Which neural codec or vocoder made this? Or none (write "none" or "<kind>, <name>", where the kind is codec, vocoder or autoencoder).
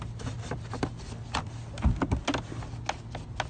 none